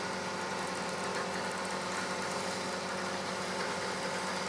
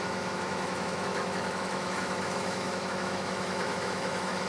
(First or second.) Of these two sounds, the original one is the first